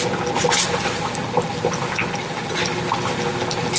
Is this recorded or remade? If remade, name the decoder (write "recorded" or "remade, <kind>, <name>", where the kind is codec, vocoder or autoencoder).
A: recorded